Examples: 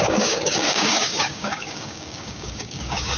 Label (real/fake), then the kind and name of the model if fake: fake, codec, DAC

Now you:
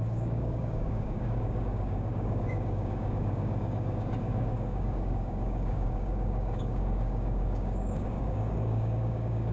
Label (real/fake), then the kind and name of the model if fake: fake, codec, DAC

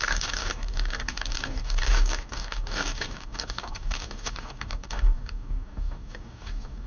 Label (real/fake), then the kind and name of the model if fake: fake, codec, DAC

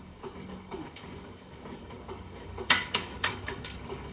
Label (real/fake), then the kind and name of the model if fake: fake, codec, DAC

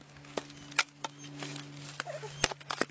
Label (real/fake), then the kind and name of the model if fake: real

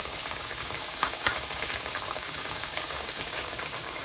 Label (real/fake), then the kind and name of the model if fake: fake, codec, DAC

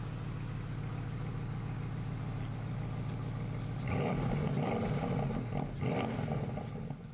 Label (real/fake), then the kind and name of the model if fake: real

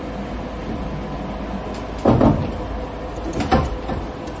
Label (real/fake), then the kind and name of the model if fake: real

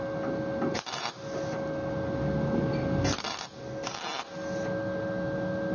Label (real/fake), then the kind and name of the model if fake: real